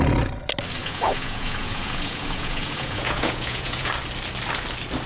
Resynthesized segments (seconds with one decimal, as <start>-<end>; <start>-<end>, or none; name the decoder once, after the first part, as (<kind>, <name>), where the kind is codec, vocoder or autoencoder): 0.8-3.9 (vocoder, Vocos)